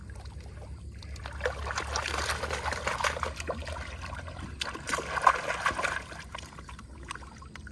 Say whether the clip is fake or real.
real